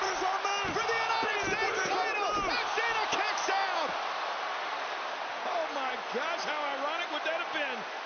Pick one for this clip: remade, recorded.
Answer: recorded